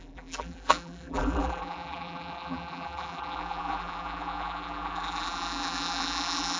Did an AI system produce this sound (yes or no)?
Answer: yes